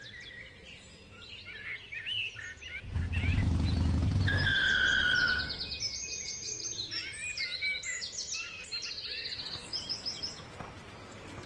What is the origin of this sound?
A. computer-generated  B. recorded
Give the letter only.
B